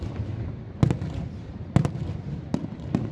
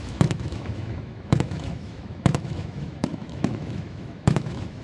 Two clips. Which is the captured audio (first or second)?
first